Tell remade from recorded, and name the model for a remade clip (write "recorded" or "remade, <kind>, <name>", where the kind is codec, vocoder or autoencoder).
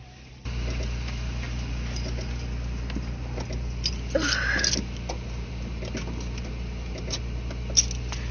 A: recorded